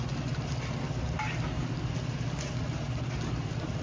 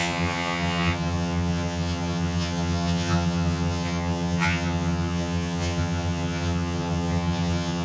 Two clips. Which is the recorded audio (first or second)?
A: first